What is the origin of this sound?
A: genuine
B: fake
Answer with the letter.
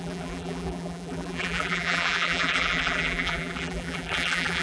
B